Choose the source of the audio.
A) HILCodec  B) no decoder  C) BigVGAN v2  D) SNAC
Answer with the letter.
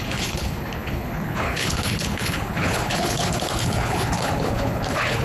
A